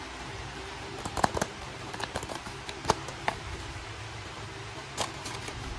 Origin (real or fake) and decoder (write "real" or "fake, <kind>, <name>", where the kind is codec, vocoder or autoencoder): fake, vocoder, BigVGAN v2